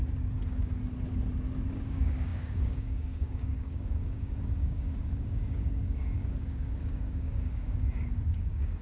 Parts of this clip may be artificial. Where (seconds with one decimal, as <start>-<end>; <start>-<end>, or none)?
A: 1.7-8.8